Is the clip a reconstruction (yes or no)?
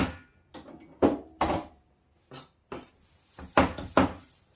no